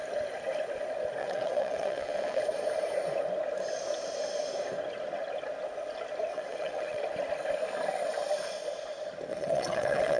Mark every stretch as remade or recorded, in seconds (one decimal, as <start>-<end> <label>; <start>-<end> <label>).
0.0-1.2 recorded; 1.2-2.4 remade; 2.4-6.3 recorded; 6.3-7.0 remade; 7.0-9.3 recorded; 9.3-10.2 remade